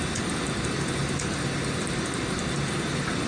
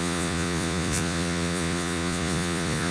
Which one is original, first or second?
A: first